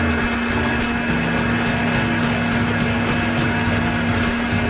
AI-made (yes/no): no